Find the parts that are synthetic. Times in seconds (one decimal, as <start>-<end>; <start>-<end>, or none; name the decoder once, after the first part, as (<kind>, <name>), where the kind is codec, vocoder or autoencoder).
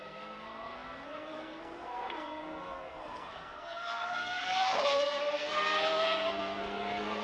0.0-7.2 (codec, SNAC)